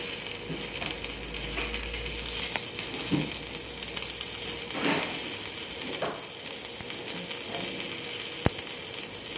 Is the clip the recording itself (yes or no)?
yes